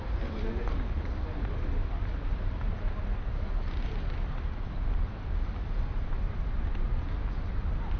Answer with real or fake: real